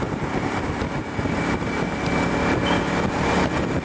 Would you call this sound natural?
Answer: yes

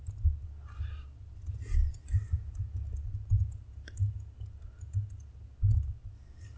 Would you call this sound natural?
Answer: yes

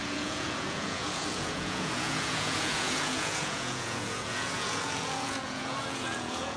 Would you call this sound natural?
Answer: no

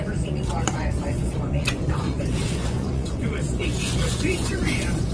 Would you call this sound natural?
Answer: no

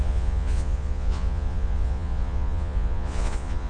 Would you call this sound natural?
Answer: no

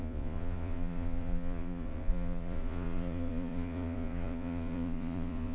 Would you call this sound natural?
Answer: no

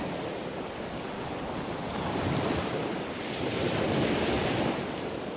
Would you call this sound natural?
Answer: yes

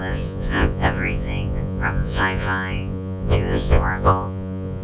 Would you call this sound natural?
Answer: no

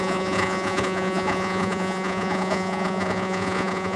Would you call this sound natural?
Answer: no